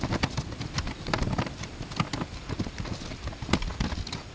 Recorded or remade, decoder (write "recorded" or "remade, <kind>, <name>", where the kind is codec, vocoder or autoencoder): recorded